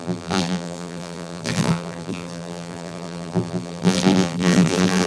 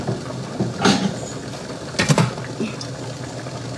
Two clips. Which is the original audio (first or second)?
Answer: second